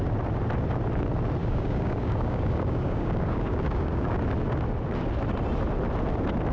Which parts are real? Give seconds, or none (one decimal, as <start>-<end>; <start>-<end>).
0.0-1.4; 4.2-6.5